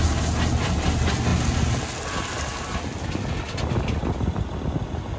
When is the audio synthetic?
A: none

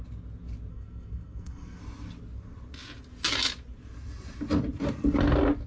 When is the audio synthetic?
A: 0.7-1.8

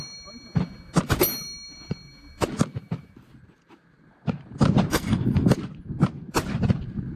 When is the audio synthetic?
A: 4.9-5.5

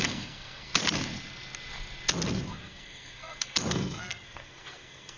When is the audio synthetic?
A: 0.0-0.7; 2.5-5.2

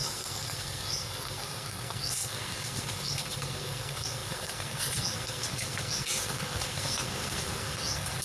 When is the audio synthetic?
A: 0.0-8.2

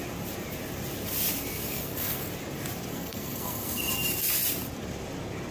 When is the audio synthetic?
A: 1.5-2.3; 2.9-3.9

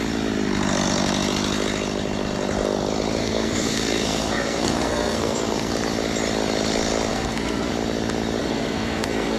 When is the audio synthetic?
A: 3.2-5.7; 7.1-7.7; 8.4-9.4